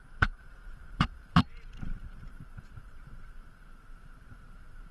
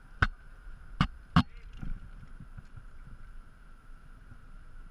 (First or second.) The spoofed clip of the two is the first